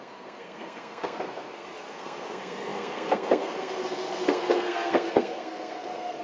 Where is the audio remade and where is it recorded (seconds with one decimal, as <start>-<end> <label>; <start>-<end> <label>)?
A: 0.0-6.2 remade